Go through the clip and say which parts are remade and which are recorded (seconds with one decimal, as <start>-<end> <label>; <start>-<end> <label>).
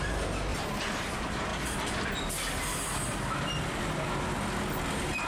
0.0-0.5 recorded; 0.5-1.1 remade; 1.1-5.3 recorded